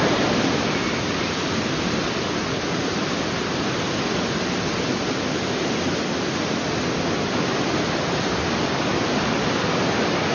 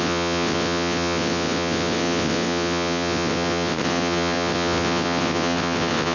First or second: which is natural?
first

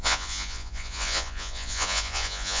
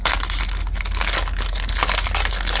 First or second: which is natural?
second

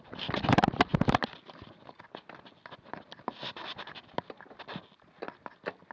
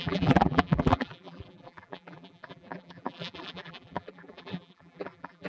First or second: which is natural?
first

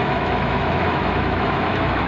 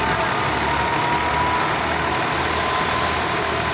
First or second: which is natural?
second